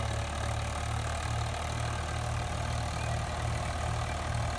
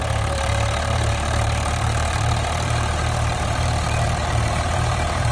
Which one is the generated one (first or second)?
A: second